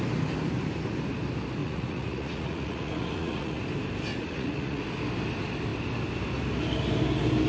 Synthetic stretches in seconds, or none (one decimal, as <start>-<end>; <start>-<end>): 1.6-3.6; 4.1-4.8